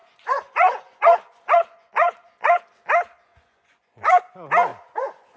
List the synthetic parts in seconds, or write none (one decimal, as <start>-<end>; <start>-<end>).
0.0-2.6; 3.3-4.2; 4.7-5.4